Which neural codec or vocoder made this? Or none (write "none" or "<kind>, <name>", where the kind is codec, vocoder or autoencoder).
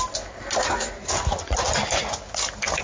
none